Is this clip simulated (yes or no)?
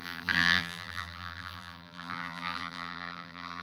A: yes